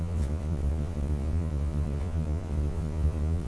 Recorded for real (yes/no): no